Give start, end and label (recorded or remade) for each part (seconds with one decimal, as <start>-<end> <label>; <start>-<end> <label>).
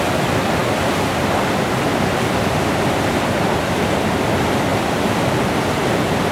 0.0-0.6 recorded; 0.6-2.7 remade; 2.7-4.7 recorded; 4.7-5.5 remade; 5.5-6.3 recorded